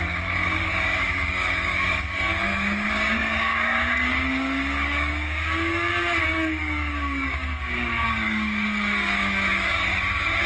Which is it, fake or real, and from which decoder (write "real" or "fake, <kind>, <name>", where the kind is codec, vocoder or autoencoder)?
fake, codec, DAC